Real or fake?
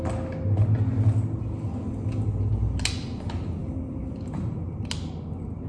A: real